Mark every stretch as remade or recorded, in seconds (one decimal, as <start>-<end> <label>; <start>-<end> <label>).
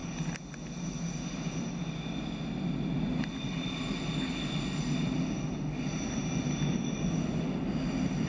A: 0.0-8.3 recorded